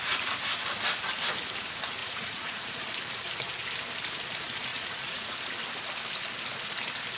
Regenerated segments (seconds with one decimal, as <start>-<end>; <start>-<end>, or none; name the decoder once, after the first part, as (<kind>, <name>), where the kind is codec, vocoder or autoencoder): 2.0-2.8 (vocoder, Vocos); 4.7-5.4